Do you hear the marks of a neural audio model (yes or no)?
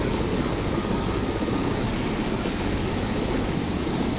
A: yes